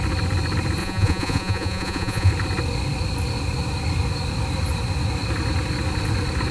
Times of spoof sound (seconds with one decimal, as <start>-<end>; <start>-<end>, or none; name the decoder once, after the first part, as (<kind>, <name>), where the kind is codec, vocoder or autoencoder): 0.8-2.3 (vocoder, Vocos)